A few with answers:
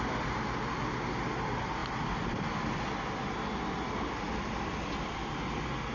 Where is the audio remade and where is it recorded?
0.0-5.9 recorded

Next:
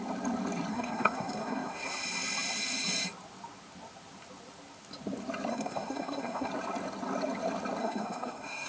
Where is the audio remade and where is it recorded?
0.0-0.7 recorded; 0.7-1.9 remade; 1.9-5.5 recorded; 5.5-6.5 remade; 6.5-7.8 recorded; 7.8-8.7 remade

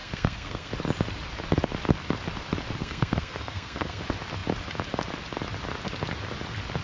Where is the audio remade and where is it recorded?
0.0-0.7 remade; 0.7-2.8 recorded; 2.8-4.0 remade; 4.0-6.8 recorded

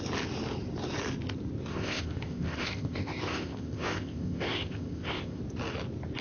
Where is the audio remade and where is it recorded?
0.0-1.7 recorded; 1.7-5.4 remade; 5.4-6.2 recorded

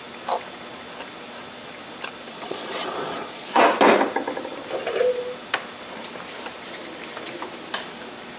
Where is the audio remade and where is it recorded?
0.0-2.3 recorded; 2.3-3.6 remade; 3.6-8.4 recorded

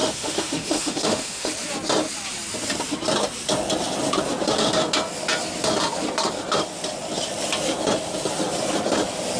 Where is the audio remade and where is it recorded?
0.0-1.5 remade; 1.5-9.4 recorded

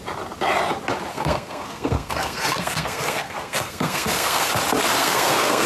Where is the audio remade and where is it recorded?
0.0-1.1 recorded; 1.1-4.5 remade; 4.5-5.0 recorded; 5.0-5.7 remade